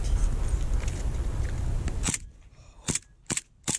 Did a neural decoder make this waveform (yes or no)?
no